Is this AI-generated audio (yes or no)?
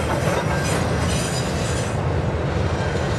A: no